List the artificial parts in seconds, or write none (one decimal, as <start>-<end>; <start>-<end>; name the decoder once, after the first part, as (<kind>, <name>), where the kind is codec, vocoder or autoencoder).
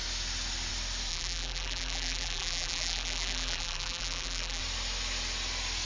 1.1-4.6 (vocoder, BigVGAN v2)